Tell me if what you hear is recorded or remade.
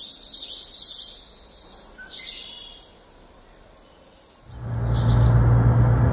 recorded